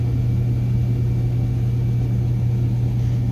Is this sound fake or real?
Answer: real